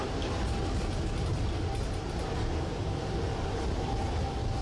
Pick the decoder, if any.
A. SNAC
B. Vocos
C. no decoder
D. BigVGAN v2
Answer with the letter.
C